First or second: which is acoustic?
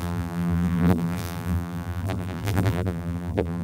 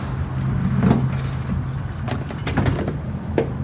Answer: second